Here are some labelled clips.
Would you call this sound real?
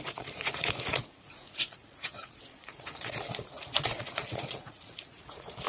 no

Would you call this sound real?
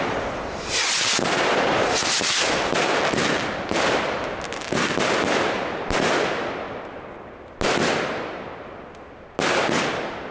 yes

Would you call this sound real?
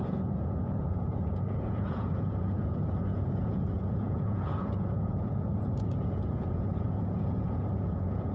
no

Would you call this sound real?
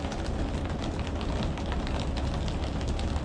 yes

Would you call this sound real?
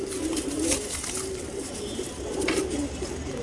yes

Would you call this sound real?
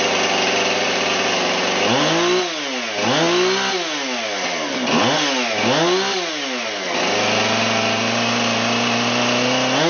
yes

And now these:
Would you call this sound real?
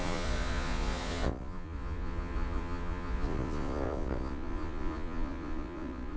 no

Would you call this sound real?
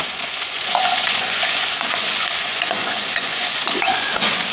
no